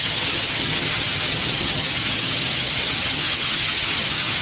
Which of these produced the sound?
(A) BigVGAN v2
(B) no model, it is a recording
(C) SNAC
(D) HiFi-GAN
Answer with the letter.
D